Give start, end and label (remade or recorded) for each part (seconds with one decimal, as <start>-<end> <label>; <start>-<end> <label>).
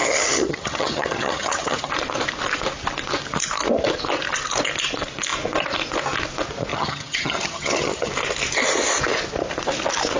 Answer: 0.0-1.9 remade; 1.9-6.7 recorded; 6.7-8.1 remade; 8.1-10.2 recorded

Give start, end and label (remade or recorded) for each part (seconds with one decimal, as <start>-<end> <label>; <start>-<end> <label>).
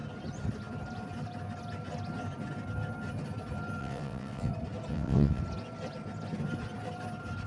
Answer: 0.0-3.8 recorded; 3.8-4.5 remade; 4.5-4.9 recorded; 4.9-5.4 remade; 5.4-7.5 recorded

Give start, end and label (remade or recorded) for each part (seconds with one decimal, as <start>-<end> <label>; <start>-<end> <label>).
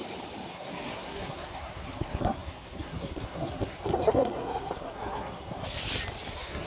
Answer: 0.0-0.5 recorded; 0.5-5.8 remade; 5.8-6.3 recorded; 6.3-6.7 remade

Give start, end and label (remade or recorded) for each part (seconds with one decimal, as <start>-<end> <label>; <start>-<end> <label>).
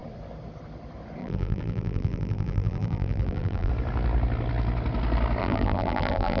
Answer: 0.0-1.2 recorded; 1.2-3.7 remade; 3.7-5.4 recorded; 5.4-6.4 remade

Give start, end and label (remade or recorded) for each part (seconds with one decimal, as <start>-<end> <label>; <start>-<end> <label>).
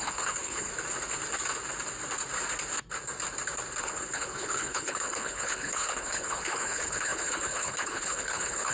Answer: 0.0-0.7 remade; 0.7-3.8 recorded; 3.8-8.7 remade